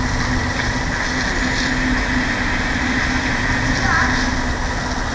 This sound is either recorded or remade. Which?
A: recorded